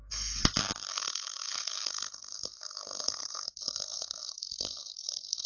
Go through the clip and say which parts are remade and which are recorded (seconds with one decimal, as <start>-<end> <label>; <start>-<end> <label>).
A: 0.0-0.4 remade; 0.4-0.9 recorded; 0.9-5.5 remade